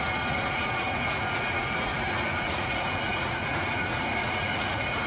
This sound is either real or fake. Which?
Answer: fake